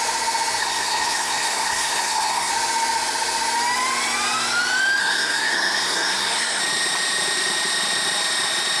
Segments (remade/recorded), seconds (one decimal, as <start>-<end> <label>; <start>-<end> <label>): 0.0-0.6 recorded; 0.6-2.5 remade; 2.5-5.0 recorded; 5.0-6.6 remade; 6.6-8.8 recorded